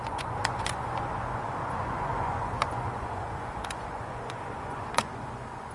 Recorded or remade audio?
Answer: remade